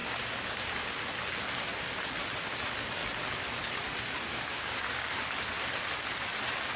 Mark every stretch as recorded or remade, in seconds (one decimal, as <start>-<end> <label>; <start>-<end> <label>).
0.0-0.6 remade; 0.6-4.3 recorded; 4.3-5.1 remade; 5.1-6.8 recorded